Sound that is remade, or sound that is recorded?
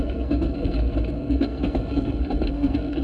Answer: remade